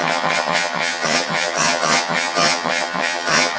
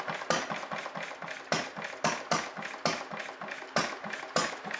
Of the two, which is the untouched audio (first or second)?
second